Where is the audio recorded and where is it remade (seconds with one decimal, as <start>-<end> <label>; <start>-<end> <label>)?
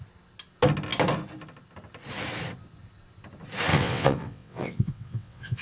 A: 0.0-3.7 recorded; 3.7-5.6 remade